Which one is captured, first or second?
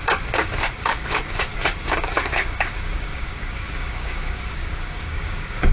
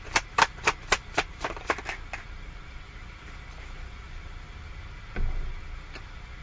second